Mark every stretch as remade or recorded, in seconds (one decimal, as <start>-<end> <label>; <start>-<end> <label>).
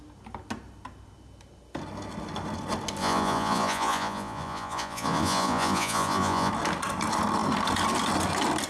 0.0-3.0 recorded; 3.0-6.5 remade; 6.5-8.7 recorded